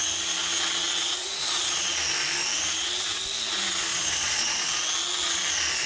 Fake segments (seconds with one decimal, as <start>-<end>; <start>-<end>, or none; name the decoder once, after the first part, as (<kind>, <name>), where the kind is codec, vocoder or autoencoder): 1.2-1.9 (vocoder, Vocos); 3.9-4.7